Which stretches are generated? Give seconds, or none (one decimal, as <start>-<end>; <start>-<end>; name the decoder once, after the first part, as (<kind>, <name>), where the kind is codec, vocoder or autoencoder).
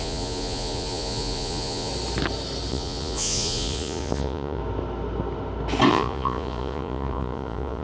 0.0-1.9 (vocoder, Vocos); 2.7-4.6; 5.9-7.8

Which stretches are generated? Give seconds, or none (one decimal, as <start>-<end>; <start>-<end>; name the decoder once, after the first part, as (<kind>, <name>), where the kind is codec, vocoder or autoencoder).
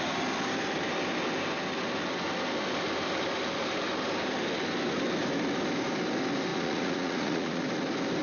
6.5-7.6 (vocoder, Vocos)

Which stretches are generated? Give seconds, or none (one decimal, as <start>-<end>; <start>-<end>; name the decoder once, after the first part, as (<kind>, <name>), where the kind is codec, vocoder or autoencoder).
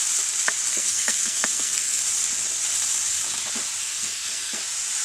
0.7-2.0 (codec, SNAC); 3.8-4.6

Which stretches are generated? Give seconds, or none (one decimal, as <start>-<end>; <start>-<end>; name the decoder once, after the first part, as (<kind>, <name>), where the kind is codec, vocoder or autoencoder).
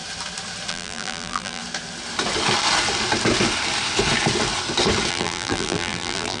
0.7-1.6 (vocoder, BigVGAN v2); 5.1-6.4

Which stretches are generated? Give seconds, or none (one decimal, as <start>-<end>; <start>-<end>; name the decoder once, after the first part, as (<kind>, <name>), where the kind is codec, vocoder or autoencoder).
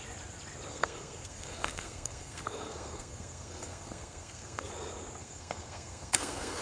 0.7-4.7 (codec, SNAC); 5.2-6.6